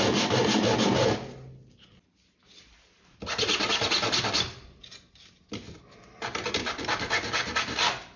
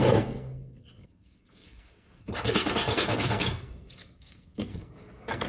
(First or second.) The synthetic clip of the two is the second